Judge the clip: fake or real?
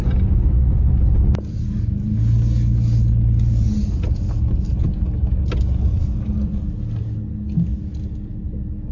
real